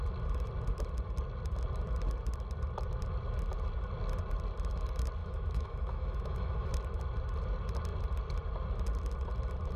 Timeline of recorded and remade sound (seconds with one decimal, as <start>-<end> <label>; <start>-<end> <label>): 0.0-5.2 recorded; 5.2-6.7 remade; 6.7-9.8 recorded